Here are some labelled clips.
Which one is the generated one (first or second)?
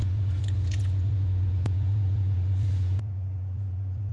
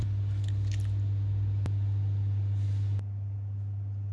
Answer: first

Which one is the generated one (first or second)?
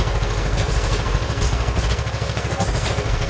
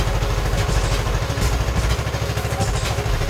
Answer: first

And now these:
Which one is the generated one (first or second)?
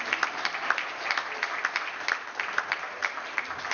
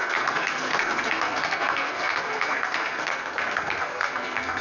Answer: second